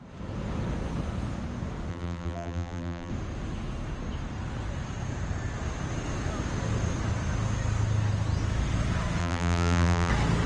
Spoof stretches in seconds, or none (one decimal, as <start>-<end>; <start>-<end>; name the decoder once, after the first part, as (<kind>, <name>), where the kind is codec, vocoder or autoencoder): 1.9-3.1 (vocoder, BigVGAN v2); 9.2-10.1